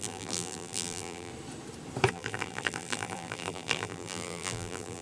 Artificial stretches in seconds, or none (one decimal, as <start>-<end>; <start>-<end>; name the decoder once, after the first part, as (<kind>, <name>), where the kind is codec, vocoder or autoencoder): 0.0-1.3 (vocoder, BigVGAN v2); 2.1-5.0